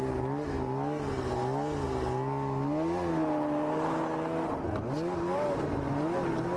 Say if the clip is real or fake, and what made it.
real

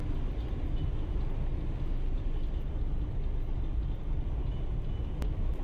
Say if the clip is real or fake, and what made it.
real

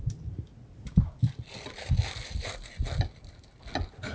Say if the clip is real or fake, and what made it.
real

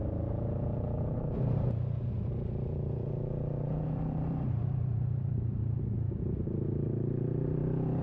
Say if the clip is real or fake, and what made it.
fake, vocoder, BigVGAN v2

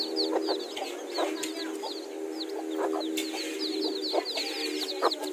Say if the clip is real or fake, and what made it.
real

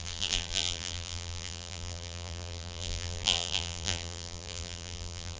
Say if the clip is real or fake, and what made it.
fake, vocoder, BigVGAN v2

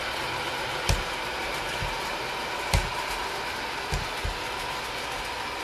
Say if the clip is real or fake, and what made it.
real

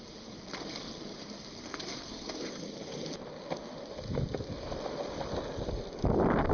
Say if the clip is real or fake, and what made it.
real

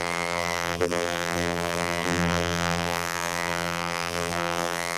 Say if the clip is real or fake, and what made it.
fake, vocoder, BigVGAN v2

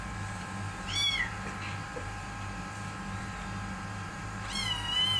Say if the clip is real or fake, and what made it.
fake, vocoder, BigVGAN v2